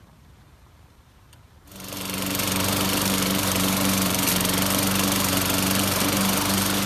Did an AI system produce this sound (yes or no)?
yes